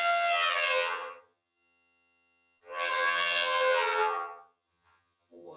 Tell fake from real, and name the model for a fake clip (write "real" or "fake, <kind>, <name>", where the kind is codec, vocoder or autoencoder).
fake, vocoder, HiFi-GAN